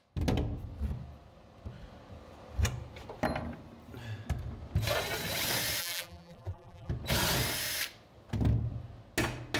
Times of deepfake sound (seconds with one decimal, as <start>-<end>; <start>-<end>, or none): 5.8-6.9